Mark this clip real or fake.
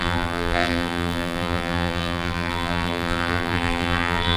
fake